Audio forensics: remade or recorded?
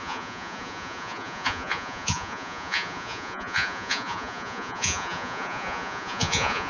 remade